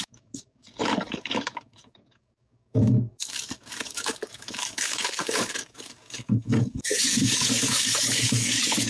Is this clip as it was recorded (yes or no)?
no